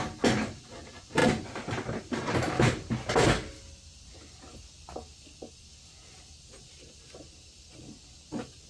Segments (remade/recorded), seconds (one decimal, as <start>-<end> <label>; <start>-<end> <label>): 0.0-8.7 recorded